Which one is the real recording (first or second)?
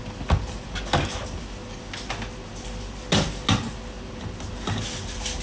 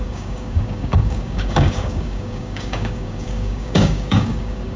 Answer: first